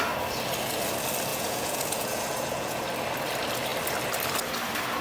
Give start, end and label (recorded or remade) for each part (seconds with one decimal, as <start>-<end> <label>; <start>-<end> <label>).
0.0-1.3 recorded; 1.3-2.8 remade; 2.8-5.0 recorded